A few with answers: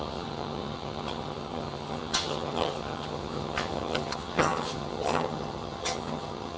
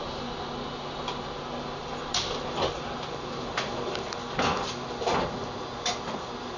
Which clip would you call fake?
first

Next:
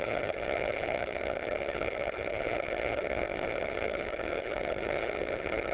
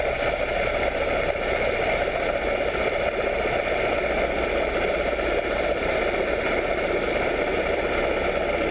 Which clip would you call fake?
first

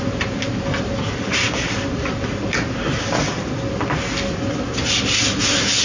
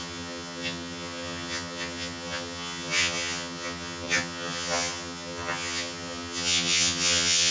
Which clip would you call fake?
second